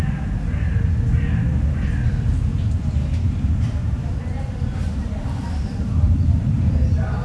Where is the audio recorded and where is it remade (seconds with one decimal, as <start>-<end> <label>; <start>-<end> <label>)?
0.0-2.5 recorded; 2.5-6.8 remade; 6.8-7.2 recorded